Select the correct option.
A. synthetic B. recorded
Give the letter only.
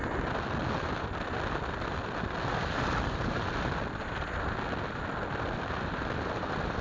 B